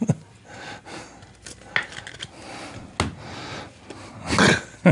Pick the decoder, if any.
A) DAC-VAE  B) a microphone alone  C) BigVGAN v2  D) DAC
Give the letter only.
B